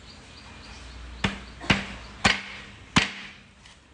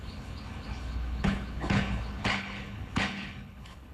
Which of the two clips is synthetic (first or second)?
second